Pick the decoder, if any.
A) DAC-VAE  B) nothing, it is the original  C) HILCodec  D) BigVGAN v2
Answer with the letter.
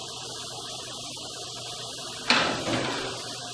B